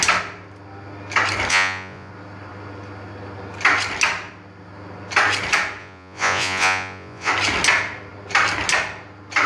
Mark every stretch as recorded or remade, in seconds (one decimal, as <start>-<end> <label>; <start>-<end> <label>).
0.0-1.5 recorded; 1.5-2.1 remade; 2.1-5.8 recorded; 5.8-7.3 remade; 7.3-9.5 recorded